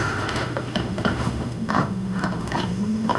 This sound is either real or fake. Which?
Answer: fake